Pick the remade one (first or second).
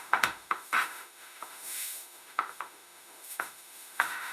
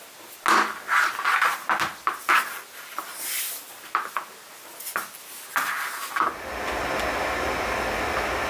first